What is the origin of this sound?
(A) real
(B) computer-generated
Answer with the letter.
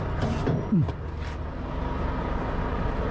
A